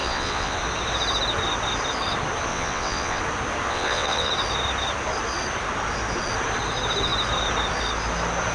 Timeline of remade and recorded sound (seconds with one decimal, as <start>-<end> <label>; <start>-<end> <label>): 0.0-0.6 remade; 0.6-2.5 recorded; 2.5-3.2 remade; 3.2-3.7 recorded; 3.7-4.3 remade; 4.3-8.5 recorded